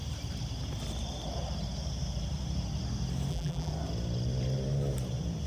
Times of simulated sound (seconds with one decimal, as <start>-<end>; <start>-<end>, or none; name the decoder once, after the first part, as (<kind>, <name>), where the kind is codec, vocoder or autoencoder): 3.3-3.7 (vocoder, BigVGAN v2)